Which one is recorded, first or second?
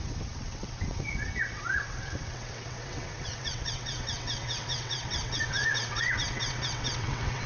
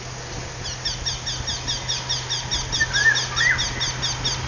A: second